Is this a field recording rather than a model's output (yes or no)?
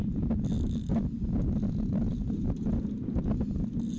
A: yes